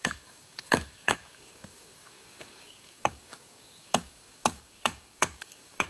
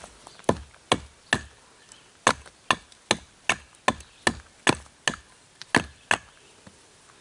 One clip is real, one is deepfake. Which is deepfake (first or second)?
first